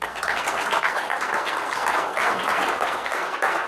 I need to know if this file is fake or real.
fake